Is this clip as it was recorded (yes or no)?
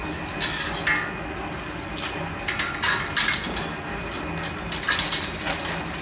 yes